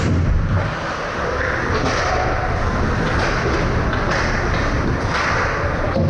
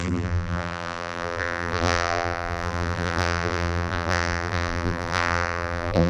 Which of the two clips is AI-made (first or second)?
second